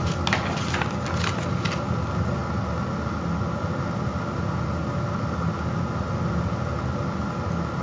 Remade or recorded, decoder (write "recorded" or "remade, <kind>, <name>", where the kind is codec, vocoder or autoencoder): recorded